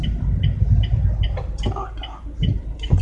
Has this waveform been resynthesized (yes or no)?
no